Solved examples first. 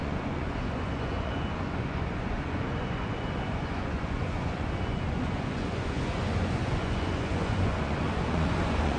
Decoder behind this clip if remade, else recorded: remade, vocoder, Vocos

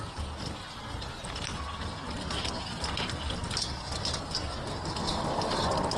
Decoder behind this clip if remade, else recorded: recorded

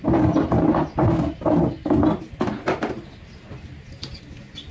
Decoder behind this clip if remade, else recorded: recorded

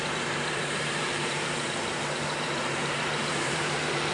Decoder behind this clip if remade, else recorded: remade, vocoder, BigVGAN v2